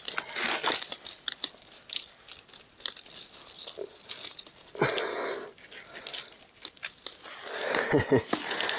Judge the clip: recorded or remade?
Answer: recorded